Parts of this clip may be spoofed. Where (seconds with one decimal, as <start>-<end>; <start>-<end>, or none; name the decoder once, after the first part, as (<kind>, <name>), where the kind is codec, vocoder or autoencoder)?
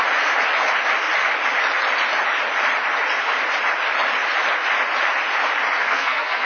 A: 5.8-6.5 (codec, SNAC)